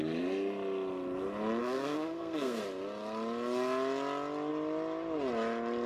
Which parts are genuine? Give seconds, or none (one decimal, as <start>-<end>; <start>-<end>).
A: 0.0-1.6; 2.6-5.9